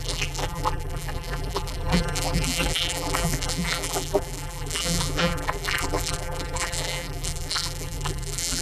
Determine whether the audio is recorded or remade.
remade